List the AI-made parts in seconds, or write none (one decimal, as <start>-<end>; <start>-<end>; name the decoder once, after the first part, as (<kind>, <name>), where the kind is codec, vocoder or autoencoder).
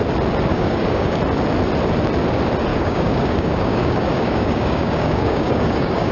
0.5-1.2 (codec, DAC); 2.7-6.1